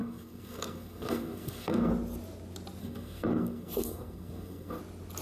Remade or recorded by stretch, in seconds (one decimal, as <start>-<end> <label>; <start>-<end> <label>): 0.0-1.9 remade; 1.9-2.8 recorded; 2.8-4.8 remade; 4.8-5.2 recorded